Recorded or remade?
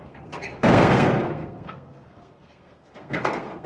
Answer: remade